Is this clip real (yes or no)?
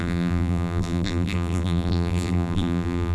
no